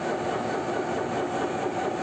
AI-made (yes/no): no